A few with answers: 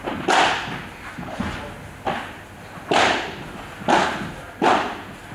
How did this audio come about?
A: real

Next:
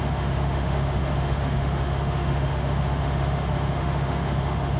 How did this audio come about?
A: fake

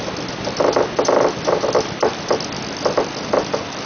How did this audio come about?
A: real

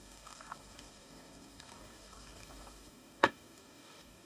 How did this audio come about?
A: fake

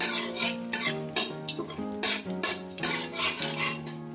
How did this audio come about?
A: real